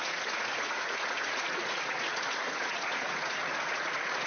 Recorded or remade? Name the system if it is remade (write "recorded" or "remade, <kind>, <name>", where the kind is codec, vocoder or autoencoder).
remade, vocoder, Vocos